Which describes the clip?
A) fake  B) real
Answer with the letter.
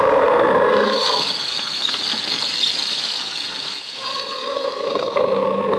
B